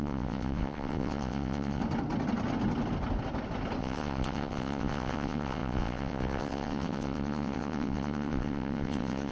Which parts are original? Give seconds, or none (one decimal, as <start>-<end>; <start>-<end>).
1.8-3.8